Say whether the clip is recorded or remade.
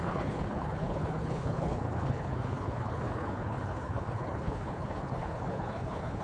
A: remade